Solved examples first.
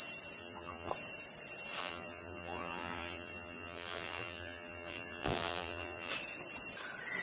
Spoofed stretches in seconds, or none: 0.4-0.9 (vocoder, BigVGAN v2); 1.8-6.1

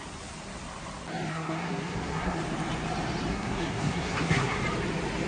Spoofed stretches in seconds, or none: 1.3-2.4 (codec, SNAC); 3.3-4.6

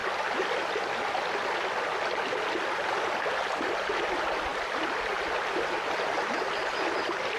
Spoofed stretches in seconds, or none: none

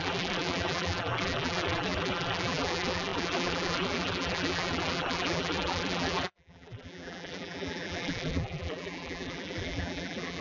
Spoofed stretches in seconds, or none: 0.0-10.4 (vocoder, BigVGAN v2)